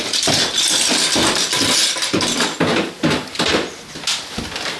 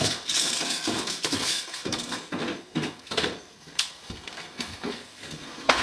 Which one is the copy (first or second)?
second